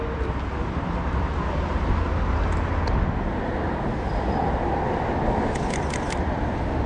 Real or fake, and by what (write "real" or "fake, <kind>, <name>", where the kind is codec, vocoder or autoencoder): real